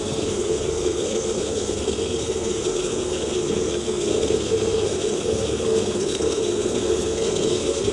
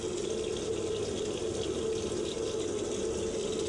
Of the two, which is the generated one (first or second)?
first